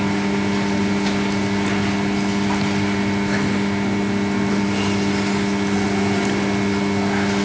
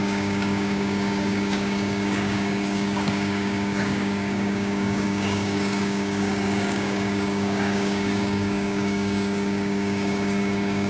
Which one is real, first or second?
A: first